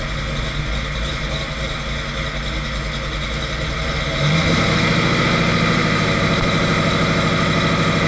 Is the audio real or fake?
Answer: real